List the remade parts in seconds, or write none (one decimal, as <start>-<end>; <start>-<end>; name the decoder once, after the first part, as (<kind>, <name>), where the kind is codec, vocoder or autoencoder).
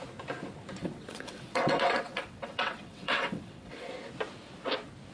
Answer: 0.8-3.9 (vocoder, WaveNeXt)